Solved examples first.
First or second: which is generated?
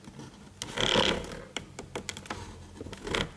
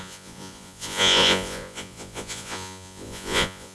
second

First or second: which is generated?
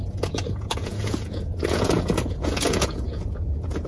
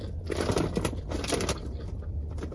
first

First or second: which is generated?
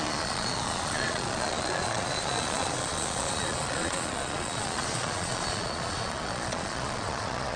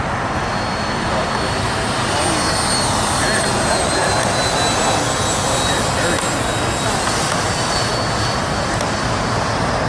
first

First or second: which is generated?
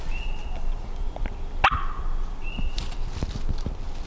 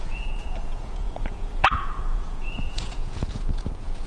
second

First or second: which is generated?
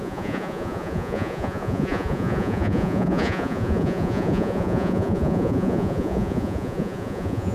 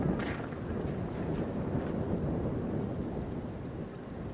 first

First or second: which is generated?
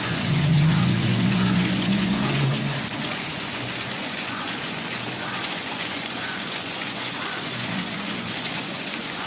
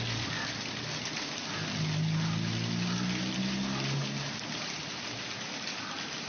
first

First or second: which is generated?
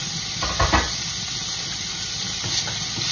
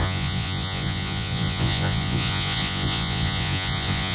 second